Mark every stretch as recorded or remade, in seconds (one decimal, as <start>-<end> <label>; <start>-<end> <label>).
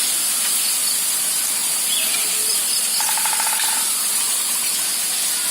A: 0.0-1.6 recorded; 1.6-4.9 remade; 4.9-5.5 recorded